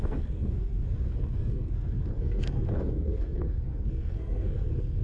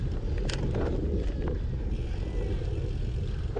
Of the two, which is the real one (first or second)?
second